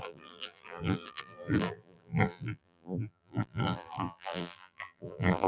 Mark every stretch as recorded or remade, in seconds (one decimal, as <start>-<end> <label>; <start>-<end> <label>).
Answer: 0.0-5.5 remade